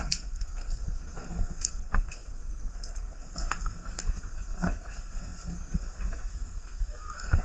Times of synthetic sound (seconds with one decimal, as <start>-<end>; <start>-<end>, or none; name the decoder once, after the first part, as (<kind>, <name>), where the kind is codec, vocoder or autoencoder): 0.0-7.4 (codec, SNAC)